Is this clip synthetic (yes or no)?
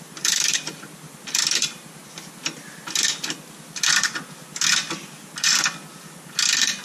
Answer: no